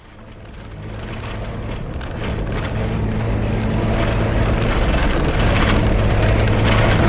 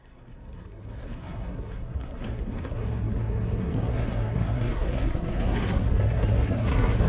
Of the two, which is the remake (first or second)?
second